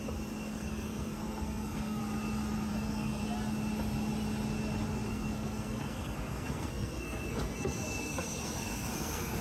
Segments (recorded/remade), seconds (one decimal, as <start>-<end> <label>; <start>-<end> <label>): 0.0-0.5 recorded; 0.5-2.0 remade; 2.0-2.7 recorded; 2.7-3.2 remade; 3.2-5.1 recorded; 5.1-9.4 remade